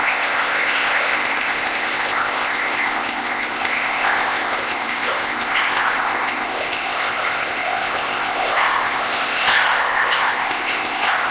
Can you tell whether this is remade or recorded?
remade